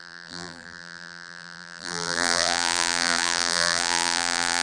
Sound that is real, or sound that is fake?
fake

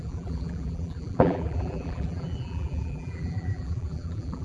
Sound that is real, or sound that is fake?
fake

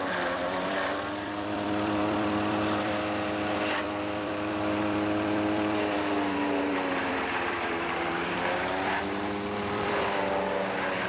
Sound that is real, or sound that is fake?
fake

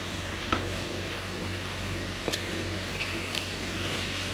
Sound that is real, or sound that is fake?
fake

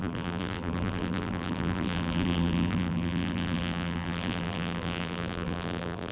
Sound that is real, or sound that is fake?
fake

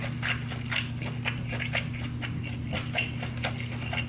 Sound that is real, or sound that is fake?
real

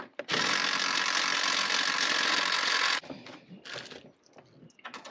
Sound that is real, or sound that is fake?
real